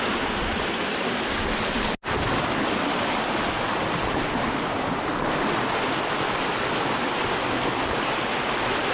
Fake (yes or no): no